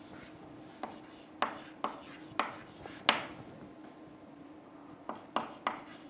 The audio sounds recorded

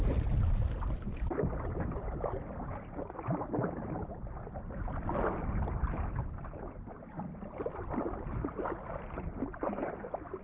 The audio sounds recorded